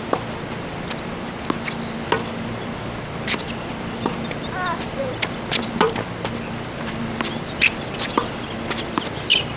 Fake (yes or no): no